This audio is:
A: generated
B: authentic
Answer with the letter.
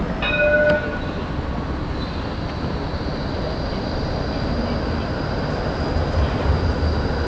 B